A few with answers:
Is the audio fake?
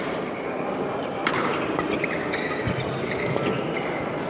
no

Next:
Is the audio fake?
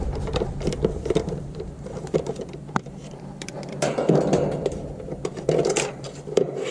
yes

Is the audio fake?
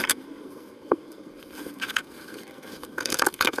yes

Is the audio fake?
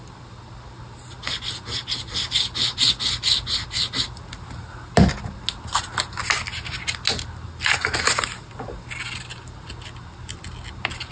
no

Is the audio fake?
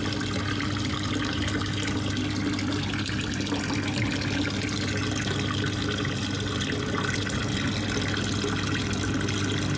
no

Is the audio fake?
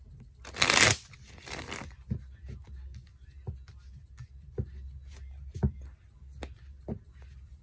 no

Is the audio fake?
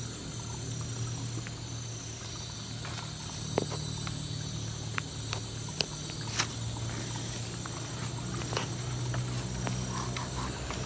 no